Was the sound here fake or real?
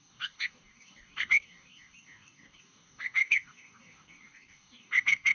fake